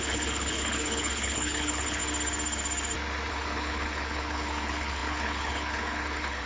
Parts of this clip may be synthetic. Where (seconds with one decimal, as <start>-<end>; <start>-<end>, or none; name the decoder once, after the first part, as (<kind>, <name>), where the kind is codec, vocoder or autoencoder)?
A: 0.0-2.0 (codec, HILCodec); 3.3-6.5